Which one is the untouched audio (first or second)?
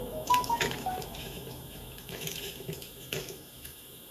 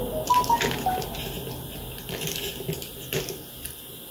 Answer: second